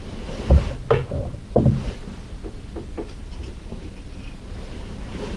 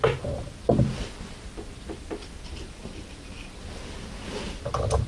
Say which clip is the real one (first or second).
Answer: second